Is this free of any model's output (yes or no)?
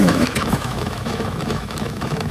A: no